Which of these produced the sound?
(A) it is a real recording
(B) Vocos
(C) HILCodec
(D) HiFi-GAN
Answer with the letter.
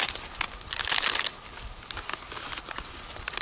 A